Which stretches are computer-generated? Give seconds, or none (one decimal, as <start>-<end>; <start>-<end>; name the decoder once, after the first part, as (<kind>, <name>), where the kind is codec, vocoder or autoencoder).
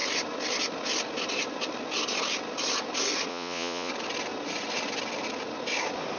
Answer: 3.3-3.9 (vocoder, Vocos)